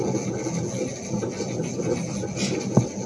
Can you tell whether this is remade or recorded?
recorded